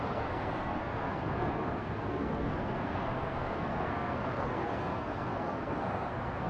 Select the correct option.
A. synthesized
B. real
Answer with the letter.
A